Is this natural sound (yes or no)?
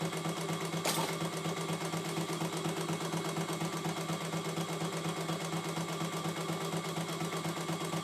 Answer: yes